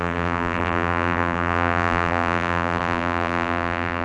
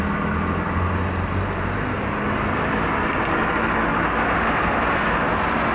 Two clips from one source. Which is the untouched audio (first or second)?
second